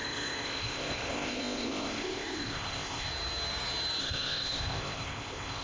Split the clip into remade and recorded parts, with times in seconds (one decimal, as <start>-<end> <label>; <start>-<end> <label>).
0.0-3.1 remade; 3.1-4.0 recorded; 4.0-5.6 remade